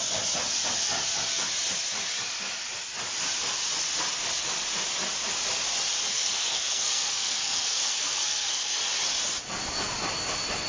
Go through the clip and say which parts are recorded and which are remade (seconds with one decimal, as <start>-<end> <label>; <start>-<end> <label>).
0.0-6.1 recorded; 6.1-8.8 remade; 8.8-10.7 recorded